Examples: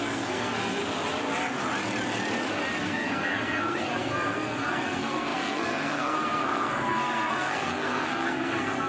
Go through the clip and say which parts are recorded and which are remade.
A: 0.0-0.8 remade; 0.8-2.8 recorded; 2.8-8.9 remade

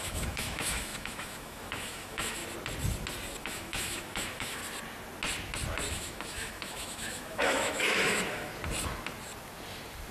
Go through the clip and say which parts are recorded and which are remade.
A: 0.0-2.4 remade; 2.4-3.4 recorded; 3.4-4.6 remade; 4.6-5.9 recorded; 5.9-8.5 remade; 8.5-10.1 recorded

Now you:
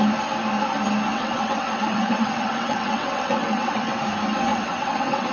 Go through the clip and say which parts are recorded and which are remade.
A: 0.0-1.1 recorded; 1.1-4.0 remade; 4.0-4.5 recorded; 4.5-5.3 remade